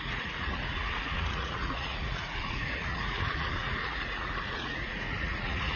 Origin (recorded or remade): remade